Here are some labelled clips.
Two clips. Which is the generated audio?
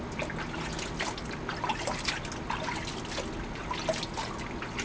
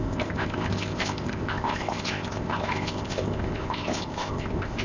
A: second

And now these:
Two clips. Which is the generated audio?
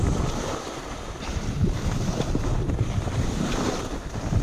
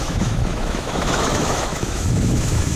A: second